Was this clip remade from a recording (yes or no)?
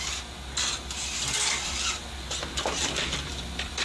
no